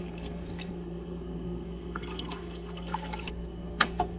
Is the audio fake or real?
fake